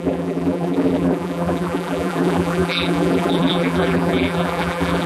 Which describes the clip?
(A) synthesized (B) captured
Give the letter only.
A